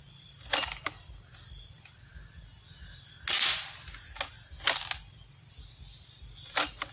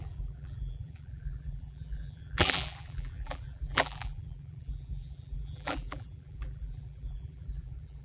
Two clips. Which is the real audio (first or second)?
first